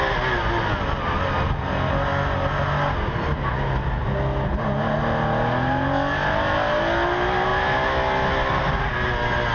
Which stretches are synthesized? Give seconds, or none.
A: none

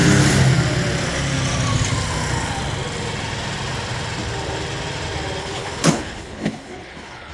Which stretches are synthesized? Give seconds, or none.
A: 5.4-7.3 (codec, HILCodec)

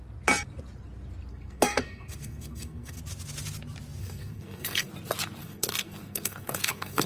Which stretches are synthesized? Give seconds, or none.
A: 1.3-3.0 (codec, SNAC); 4.0-4.9; 5.4-7.1